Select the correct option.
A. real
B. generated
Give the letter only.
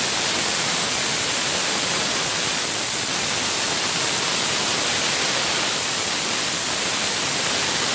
A